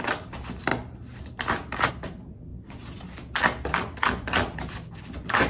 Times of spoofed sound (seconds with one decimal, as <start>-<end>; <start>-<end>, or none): 0.7-1.9